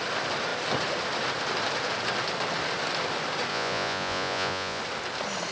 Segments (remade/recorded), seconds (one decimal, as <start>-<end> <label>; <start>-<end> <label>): 0.0-3.5 recorded; 3.5-4.8 remade; 4.8-5.5 recorded